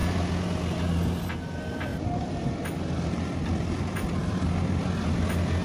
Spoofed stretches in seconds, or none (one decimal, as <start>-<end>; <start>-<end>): 1.9-3.4; 4.2-4.8